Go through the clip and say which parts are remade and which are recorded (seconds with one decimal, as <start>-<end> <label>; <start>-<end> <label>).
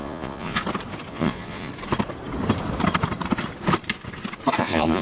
0.0-0.6 remade; 0.6-1.1 recorded; 1.1-1.7 remade; 1.7-4.6 recorded; 4.6-5.0 remade